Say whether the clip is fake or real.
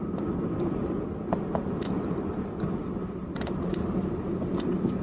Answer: fake